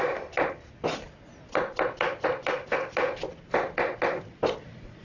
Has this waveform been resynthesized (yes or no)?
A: no